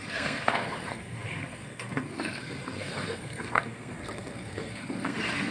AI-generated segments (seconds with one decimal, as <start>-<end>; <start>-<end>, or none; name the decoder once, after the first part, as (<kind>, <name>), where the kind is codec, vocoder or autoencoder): 0.0-5.5 (codec, SNAC)